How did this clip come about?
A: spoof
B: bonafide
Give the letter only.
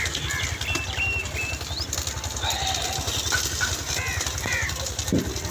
B